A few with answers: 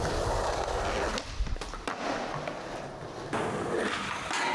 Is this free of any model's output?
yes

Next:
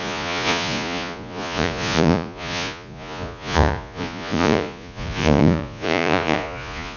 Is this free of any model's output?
no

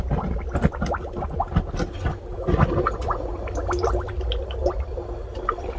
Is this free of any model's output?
yes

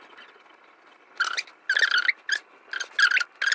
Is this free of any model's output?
yes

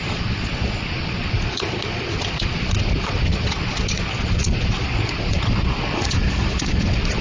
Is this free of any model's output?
no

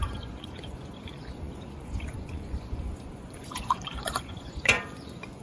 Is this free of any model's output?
no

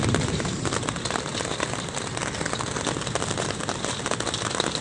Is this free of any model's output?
yes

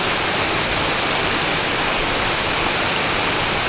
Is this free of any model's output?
yes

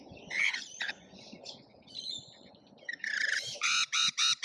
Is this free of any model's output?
no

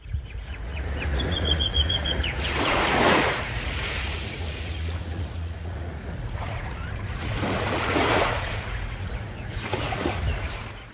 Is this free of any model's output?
no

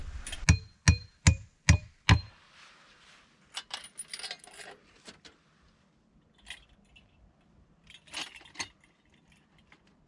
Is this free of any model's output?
yes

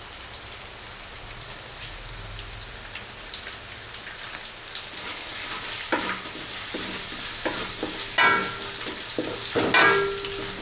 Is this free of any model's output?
yes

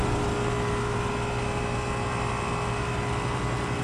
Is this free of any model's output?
yes